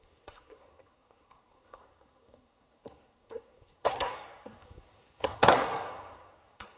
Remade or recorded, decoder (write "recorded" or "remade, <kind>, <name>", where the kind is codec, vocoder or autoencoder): remade, codec, SNAC